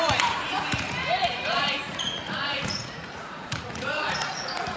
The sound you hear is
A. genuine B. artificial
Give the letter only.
B